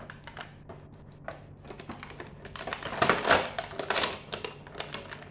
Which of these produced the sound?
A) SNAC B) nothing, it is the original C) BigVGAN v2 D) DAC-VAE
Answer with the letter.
B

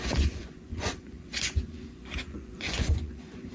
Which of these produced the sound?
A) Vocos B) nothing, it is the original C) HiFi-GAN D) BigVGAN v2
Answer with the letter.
A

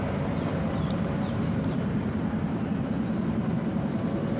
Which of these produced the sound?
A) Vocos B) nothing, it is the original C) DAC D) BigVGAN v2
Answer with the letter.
D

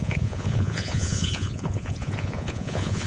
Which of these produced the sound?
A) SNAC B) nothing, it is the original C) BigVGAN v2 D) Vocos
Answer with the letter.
D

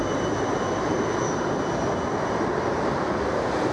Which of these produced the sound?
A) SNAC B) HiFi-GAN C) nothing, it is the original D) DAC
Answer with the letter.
C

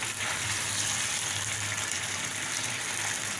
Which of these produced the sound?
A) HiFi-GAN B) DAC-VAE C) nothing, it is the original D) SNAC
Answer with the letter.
C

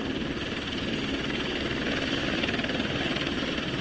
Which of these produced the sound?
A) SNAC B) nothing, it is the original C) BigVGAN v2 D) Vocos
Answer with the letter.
B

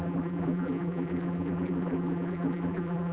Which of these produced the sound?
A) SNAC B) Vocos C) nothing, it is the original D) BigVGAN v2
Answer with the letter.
D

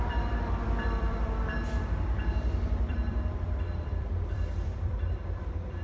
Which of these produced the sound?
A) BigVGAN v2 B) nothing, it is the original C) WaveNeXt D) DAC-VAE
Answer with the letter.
A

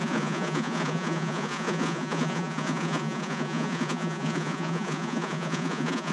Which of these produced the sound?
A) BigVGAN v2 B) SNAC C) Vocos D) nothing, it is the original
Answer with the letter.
C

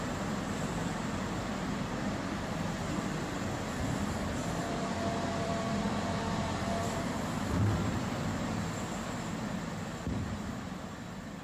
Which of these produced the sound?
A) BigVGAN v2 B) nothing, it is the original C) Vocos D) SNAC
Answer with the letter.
A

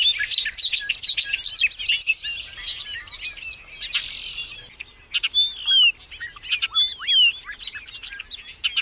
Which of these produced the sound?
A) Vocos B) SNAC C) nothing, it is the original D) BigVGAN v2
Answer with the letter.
C